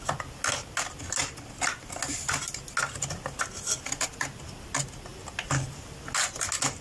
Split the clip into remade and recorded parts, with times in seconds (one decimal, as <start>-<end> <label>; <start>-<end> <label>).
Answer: 0.0-6.8 recorded